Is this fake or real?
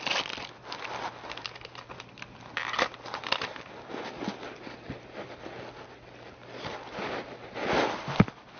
real